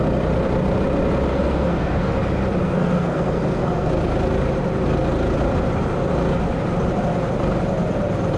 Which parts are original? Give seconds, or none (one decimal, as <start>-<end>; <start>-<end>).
0.0-1.3; 2.1-2.6; 3.9-8.4